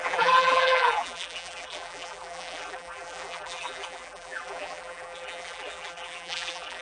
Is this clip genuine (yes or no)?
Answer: no